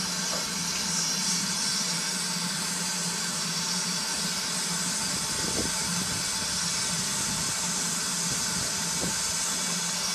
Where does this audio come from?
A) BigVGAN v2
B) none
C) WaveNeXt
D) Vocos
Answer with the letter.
B